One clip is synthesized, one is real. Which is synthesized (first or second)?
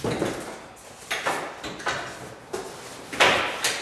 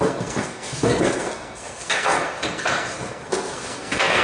second